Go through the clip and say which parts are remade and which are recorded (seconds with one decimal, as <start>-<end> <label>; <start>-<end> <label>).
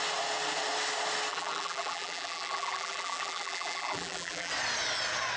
0.0-1.3 recorded; 1.3-4.5 remade; 4.5-5.4 recorded